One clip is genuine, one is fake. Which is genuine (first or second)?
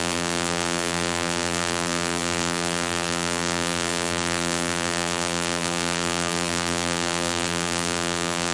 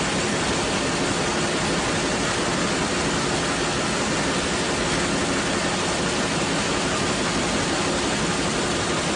second